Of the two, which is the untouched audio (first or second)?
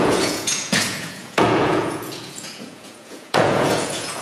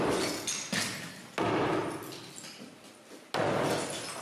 second